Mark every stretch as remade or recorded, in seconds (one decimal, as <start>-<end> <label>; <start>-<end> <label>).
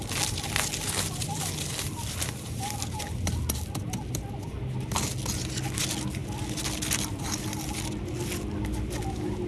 0.0-9.5 recorded